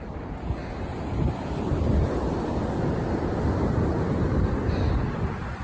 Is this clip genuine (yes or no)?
yes